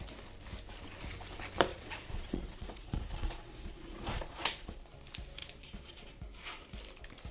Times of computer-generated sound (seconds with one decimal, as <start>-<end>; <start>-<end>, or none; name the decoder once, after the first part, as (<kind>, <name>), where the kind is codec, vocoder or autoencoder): 1.7-4.8 (vocoder, Vocos); 5.4-6.2